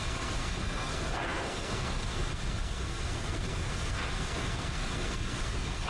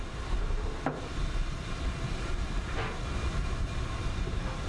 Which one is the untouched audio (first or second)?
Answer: second